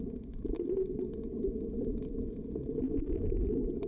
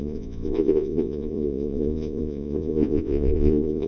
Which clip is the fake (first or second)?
second